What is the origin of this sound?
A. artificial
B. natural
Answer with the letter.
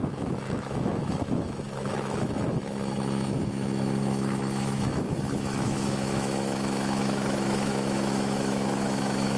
A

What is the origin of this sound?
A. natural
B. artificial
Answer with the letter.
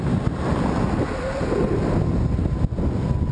A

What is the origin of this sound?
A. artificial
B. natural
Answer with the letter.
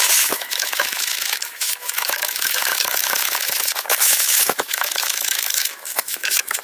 A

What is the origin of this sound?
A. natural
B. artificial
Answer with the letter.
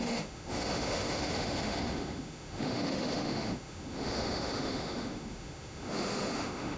B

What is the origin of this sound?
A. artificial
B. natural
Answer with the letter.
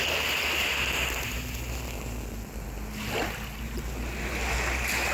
B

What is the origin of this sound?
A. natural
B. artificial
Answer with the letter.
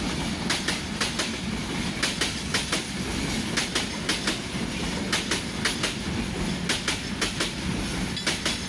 A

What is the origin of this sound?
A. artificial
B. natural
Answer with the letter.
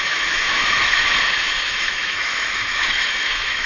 A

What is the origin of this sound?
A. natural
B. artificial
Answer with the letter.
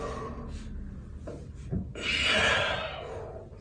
A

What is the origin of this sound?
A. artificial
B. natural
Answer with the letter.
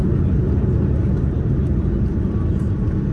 B